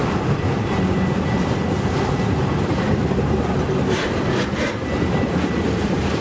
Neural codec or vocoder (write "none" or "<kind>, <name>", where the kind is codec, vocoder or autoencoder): none